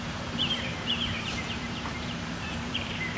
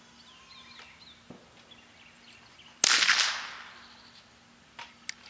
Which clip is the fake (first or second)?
first